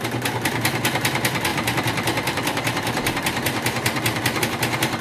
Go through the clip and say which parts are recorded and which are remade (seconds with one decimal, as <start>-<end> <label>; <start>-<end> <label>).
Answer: 0.0-1.5 recorded; 1.5-4.4 remade; 4.4-5.0 recorded